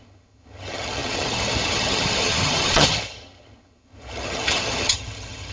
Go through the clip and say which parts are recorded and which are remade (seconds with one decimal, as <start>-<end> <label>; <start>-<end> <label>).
0.0-5.5 remade